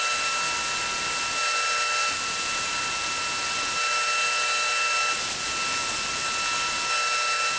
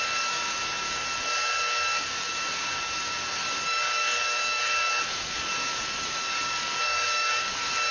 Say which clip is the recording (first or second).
first